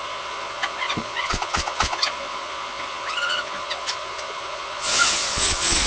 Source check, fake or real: fake